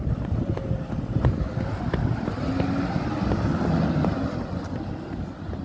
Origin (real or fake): real